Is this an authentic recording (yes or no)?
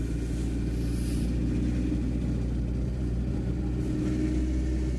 yes